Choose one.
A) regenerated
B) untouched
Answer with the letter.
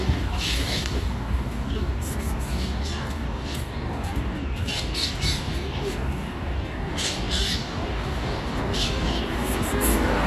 A